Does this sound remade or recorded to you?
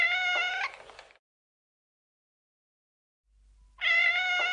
recorded